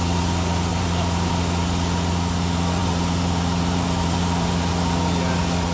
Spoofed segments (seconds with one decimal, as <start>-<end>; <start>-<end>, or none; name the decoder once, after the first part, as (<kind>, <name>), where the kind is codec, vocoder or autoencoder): 0.7-1.3 (vocoder, BigVGAN v2); 2.8-4.7